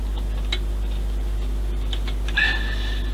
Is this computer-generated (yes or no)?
no